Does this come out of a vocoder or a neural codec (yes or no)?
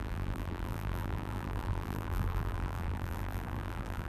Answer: yes